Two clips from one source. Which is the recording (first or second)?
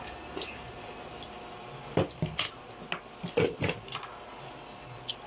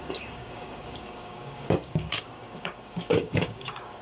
first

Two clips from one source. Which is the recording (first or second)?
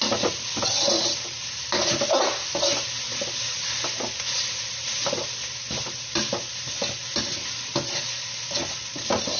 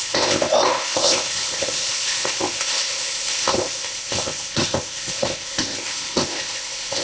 first